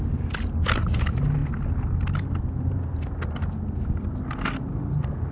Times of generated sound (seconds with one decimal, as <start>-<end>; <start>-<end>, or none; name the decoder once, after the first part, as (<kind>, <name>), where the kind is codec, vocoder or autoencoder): none